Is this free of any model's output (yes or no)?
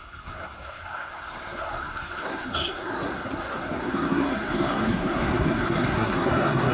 no